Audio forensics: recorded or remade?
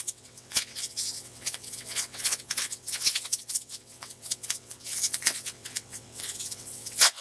remade